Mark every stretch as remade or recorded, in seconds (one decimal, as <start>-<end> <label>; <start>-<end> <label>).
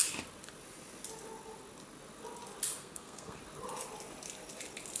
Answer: 0.0-2.8 recorded; 2.8-3.4 remade; 3.4-5.0 recorded